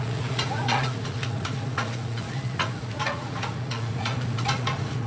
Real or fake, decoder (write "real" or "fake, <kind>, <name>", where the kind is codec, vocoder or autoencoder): fake, vocoder, Vocos